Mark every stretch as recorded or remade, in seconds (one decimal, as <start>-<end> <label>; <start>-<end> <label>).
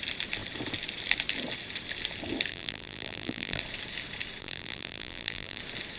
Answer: 0.0-2.5 recorded; 2.5-3.6 remade; 3.6-4.4 recorded; 4.4-5.6 remade; 5.6-6.0 recorded